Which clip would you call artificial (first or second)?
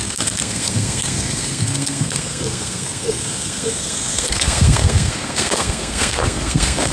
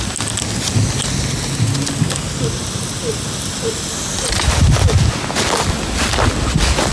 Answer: first